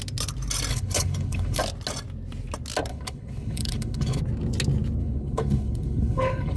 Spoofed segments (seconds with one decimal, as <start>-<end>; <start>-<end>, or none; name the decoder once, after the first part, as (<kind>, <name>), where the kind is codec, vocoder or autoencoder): 0.7-1.6 (codec, HILCodec); 2.9-4.2; 5.0-6.6